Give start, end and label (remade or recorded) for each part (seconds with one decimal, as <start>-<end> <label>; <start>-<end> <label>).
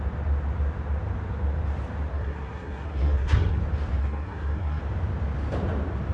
0.0-2.1 recorded; 2.1-3.6 remade; 3.6-4.0 recorded; 4.0-4.8 remade; 4.8-6.1 recorded